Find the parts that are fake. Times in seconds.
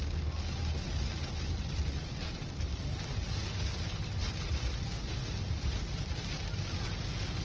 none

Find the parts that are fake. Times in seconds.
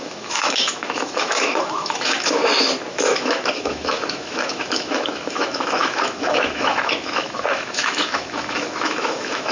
0.0-2.4 (autoencoder, DAC-VAE); 2.9-9.5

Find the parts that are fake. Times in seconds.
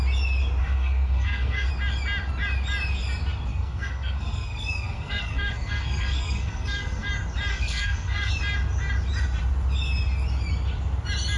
0.6-1.7 (codec, SNAC); 3.5-7.1; 7.5-8.3